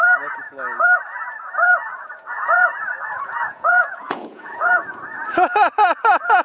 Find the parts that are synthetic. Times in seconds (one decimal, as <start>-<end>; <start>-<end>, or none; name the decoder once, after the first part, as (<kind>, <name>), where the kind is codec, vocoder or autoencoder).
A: 1.9-4.7 (vocoder, Vocos)